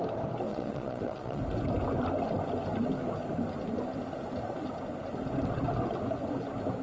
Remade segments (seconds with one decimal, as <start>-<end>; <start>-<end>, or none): 0.5-1.4